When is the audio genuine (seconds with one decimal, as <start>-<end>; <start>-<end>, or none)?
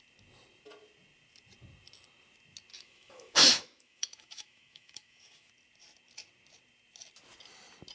0.0-2.7; 5.5-7.9